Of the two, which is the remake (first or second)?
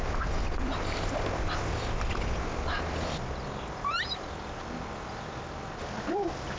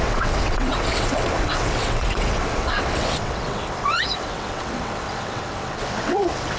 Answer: second